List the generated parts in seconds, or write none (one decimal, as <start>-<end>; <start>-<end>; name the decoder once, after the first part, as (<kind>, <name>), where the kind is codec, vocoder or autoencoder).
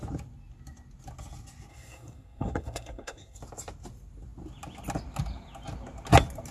1.7-3.4 (codec, SNAC)